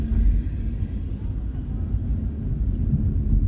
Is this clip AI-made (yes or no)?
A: no